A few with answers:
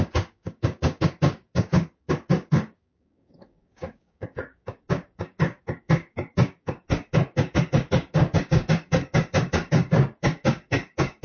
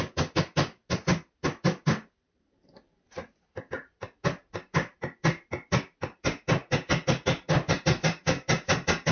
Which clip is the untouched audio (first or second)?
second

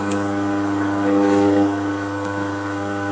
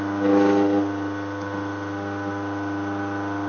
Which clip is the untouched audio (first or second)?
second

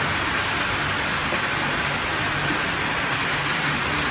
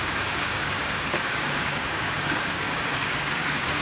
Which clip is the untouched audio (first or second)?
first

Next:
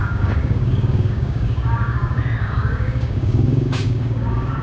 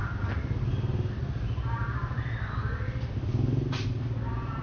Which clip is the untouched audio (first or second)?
second